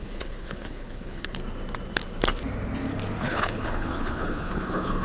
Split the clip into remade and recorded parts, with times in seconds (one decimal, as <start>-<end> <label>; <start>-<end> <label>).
0.0-1.4 remade; 1.4-3.2 recorded; 3.2-5.0 remade